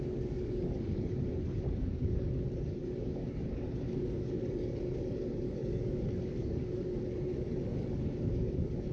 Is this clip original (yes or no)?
no